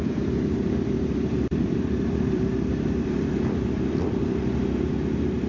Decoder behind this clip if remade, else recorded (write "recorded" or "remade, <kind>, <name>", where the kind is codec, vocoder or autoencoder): remade, vocoder, BigVGAN v2